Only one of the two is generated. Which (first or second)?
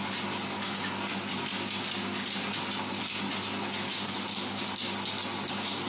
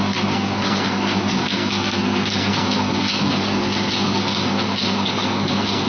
second